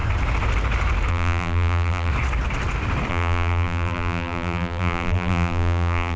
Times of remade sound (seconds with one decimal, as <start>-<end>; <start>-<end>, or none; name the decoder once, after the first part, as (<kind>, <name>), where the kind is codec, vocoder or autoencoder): 1.1-2.1 (vocoder, BigVGAN v2); 3.1-6.2

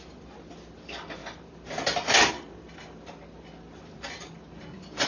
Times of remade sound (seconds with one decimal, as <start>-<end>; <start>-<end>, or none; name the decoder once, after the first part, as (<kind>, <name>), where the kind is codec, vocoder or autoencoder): none

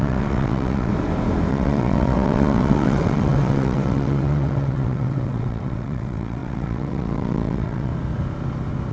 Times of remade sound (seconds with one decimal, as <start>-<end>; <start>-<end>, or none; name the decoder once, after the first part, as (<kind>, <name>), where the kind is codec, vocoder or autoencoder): 0.0-0.9 (vocoder, WaveNeXt); 1.5-7.9

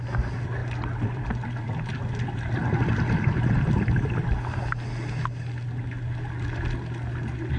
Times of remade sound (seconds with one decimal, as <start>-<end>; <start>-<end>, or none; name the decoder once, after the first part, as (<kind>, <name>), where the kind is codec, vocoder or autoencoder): 0.6-2.0 (vocoder, BigVGAN v2)

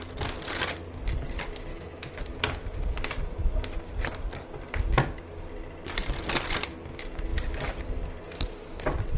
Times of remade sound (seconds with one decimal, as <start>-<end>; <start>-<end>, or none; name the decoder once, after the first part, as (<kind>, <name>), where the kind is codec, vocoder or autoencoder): 1.7-2.2 (autoencoder, DAC-VAE)

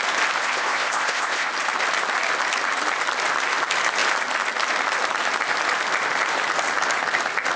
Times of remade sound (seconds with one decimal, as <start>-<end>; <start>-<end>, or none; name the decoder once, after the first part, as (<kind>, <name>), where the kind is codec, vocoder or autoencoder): 0.4-1.5 (codec, ZipCodec)

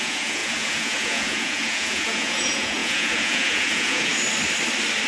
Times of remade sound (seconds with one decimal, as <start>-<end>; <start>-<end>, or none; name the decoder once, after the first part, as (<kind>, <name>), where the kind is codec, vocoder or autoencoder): 0.0-4.1 (vocoder, Vocos)

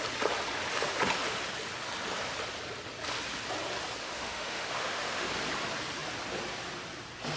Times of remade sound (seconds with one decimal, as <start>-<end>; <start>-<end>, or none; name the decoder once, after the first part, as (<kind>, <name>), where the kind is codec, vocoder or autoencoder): 4.0-5.3 (autoencoder, DAC-VAE)